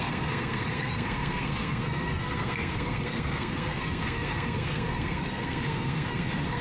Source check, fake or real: fake